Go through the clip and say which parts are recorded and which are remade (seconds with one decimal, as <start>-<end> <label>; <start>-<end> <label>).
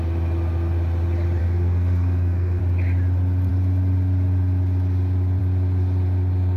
0.0-1.4 recorded; 1.4-2.6 remade; 2.6-6.6 recorded